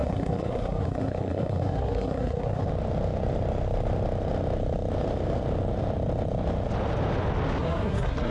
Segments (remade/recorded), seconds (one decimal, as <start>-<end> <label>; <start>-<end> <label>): 0.0-2.7 remade; 2.7-7.6 recorded; 7.6-8.3 remade